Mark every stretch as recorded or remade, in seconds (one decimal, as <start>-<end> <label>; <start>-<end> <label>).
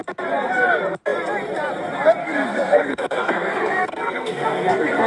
0.0-2.2 recorded; 2.2-5.1 remade